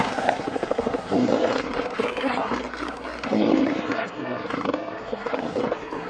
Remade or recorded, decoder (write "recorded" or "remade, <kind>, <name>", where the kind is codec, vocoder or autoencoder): remade, codec, SNAC